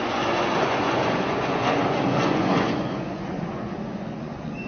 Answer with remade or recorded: remade